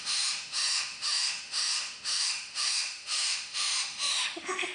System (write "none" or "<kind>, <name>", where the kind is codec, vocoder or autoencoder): autoencoder, DAC-VAE